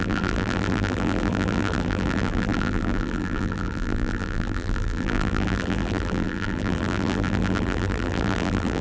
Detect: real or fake fake